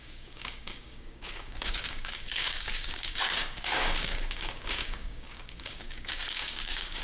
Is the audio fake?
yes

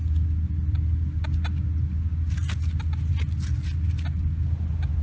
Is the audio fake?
no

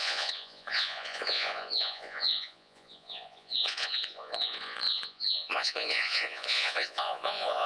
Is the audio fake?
yes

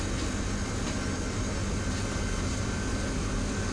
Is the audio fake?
no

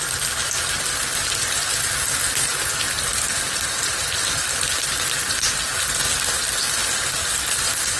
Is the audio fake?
no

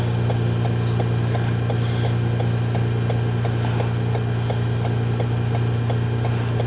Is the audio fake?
no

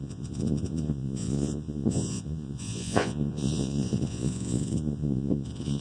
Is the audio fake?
yes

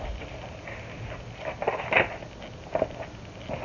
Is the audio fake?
no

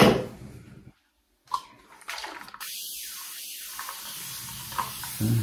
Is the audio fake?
no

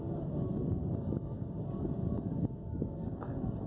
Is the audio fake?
yes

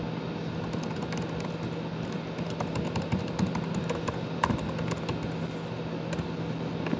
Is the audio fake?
no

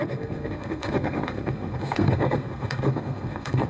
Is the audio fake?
yes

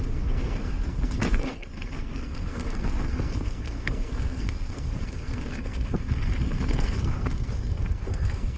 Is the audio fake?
yes